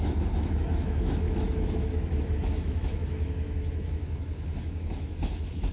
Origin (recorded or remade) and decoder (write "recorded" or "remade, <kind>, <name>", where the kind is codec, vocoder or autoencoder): remade, autoencoder, DAC-VAE